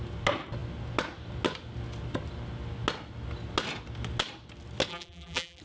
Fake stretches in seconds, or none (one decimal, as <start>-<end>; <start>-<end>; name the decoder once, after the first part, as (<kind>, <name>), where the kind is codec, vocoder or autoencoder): 4.9-5.6 (vocoder, BigVGAN v2)